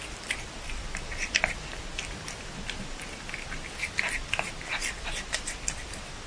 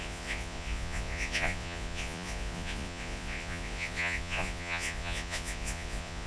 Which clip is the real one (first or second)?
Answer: first